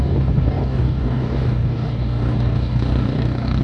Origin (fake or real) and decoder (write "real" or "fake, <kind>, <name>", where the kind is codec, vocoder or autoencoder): fake, codec, DAC